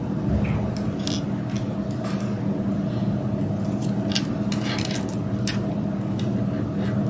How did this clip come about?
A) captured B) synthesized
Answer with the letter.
A